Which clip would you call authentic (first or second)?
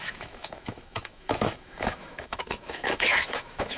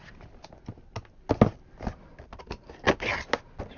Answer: second